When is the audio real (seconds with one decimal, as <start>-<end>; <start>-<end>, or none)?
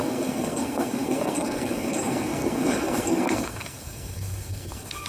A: none